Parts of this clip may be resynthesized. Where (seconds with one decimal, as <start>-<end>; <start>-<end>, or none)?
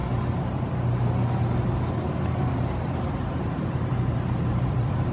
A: 3.1-5.1